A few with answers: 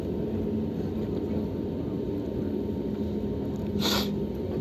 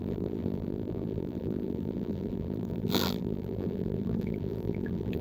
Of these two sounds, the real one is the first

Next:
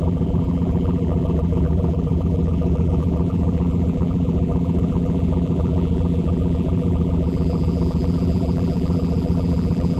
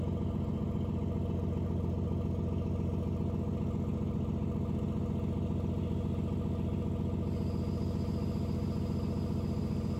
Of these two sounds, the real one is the second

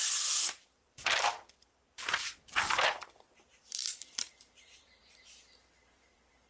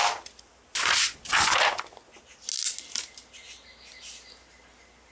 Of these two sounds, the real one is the second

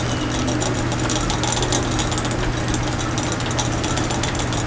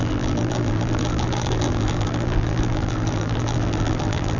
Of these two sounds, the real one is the first